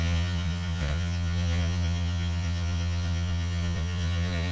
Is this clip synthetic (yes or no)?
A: yes